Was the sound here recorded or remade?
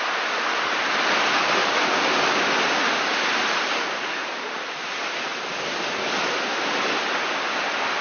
recorded